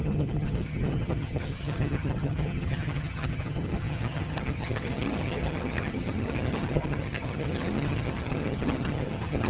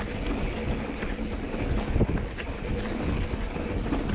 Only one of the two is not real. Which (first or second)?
first